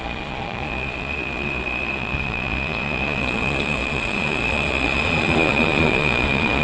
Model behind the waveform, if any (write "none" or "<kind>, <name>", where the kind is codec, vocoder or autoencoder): vocoder, Vocos